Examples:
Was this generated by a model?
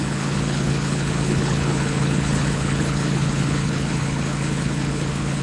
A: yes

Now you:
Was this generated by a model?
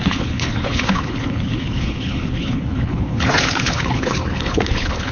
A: yes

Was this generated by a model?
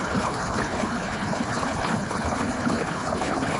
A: yes